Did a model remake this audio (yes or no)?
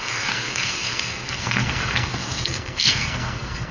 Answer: yes